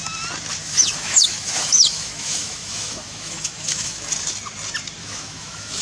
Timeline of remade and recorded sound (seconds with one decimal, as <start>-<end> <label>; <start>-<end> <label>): 0.0-0.6 recorded; 0.6-4.1 remade; 4.1-5.0 recorded; 5.0-5.8 remade